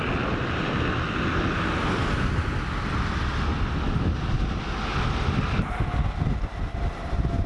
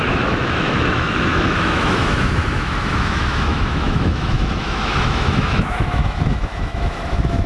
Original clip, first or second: first